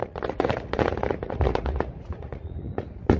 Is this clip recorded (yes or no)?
no